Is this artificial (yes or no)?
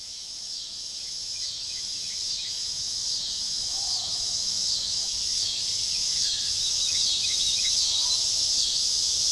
yes